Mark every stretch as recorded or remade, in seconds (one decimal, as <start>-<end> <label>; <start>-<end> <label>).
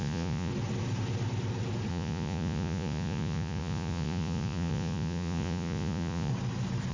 0.0-0.5 remade; 0.5-1.9 recorded; 1.9-6.3 remade; 6.3-6.9 recorded